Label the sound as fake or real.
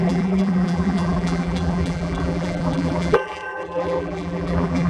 fake